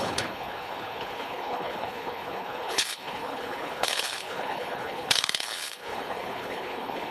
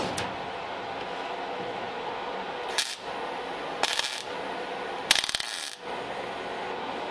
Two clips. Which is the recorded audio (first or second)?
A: second